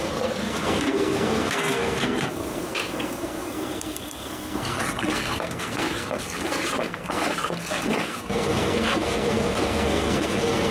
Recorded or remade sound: remade